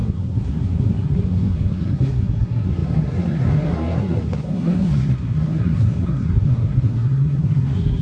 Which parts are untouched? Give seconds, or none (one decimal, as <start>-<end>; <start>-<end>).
none